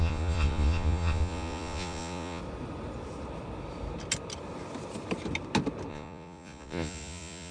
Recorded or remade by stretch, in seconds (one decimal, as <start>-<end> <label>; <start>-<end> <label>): 0.0-2.4 remade; 2.4-5.9 recorded; 5.9-7.5 remade